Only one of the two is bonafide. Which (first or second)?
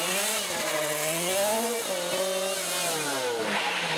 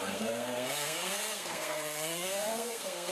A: first